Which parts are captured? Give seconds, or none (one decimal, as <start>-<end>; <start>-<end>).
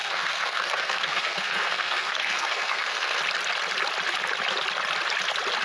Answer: 3.2-5.6